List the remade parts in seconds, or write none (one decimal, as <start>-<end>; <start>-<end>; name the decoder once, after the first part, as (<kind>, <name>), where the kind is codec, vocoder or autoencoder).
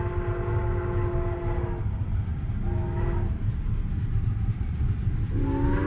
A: none